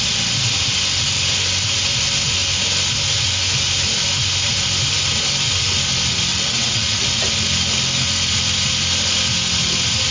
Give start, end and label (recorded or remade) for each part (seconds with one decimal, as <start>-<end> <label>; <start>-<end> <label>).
0.0-6.3 recorded; 6.3-7.2 remade; 7.2-10.1 recorded